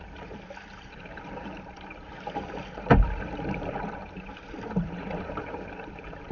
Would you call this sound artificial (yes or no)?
yes